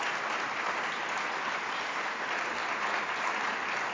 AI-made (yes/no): no